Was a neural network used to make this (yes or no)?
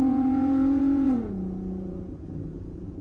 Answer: yes